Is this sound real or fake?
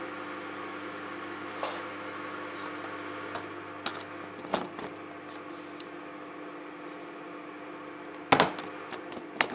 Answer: real